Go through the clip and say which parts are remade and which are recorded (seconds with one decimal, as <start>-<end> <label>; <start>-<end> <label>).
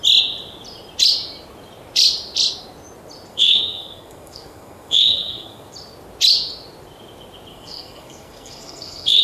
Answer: 0.0-3.3 recorded; 3.3-5.7 remade; 5.7-7.5 recorded; 7.5-9.2 remade